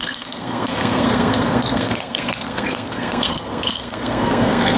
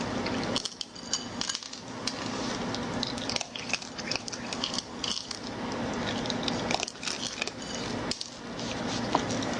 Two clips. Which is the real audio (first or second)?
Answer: second